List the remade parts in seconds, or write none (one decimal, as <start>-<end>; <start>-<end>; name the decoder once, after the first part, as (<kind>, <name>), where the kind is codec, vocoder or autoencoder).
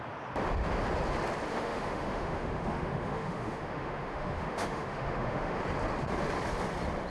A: 1.5-5.6 (autoencoder, DAC-VAE)